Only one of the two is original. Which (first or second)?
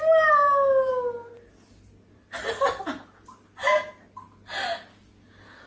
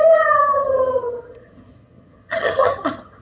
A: first